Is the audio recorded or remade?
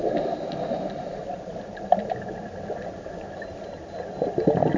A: recorded